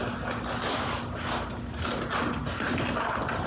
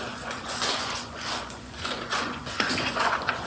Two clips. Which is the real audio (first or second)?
first